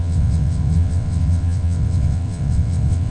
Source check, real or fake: fake